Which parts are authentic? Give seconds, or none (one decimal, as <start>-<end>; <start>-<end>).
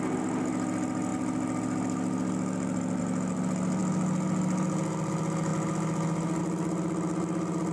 0.0-7.7